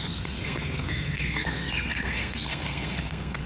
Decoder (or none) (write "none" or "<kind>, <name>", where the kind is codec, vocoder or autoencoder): codec, SNAC